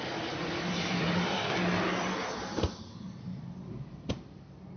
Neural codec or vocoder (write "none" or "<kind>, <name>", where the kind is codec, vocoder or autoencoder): vocoder, BigVGAN v2